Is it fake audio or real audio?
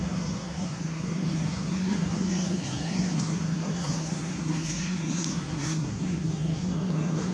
fake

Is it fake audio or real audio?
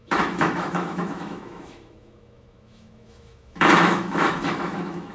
fake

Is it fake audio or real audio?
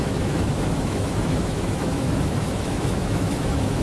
fake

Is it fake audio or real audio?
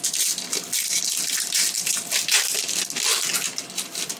real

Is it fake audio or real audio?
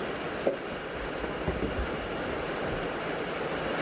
real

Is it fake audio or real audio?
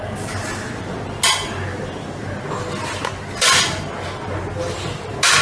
real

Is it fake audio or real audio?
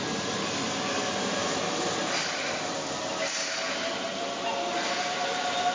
real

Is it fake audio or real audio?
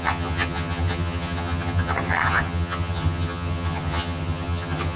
fake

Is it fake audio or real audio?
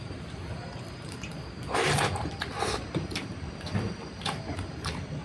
fake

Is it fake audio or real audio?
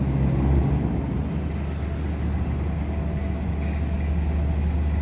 real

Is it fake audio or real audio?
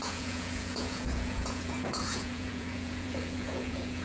fake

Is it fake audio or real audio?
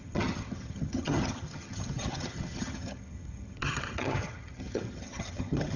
fake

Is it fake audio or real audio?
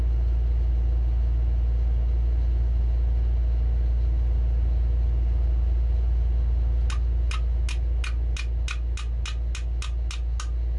real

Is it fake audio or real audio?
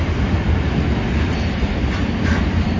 fake